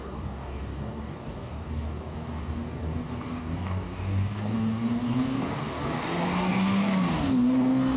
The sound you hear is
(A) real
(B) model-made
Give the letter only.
B